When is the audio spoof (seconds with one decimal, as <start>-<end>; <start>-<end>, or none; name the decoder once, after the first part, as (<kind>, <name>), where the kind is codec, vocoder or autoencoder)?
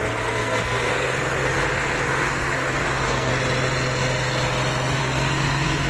0.0-3.3 (codec, SNAC); 5.0-5.9